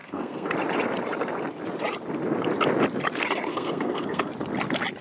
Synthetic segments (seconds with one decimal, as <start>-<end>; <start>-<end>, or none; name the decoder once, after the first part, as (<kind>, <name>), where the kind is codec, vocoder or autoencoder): 0.0-0.5 (codec, SNAC); 3.5-4.3